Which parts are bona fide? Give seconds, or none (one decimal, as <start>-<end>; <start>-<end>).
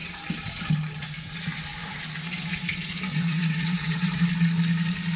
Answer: 0.0-3.1; 4.3-5.2